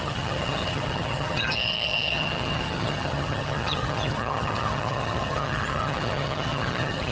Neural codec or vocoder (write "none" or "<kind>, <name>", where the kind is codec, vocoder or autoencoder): vocoder, HiFi-GAN